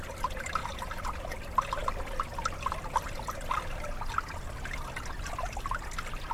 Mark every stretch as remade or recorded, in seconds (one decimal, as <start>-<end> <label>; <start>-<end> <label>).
0.0-6.3 recorded